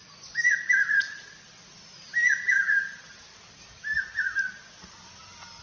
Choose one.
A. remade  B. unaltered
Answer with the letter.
B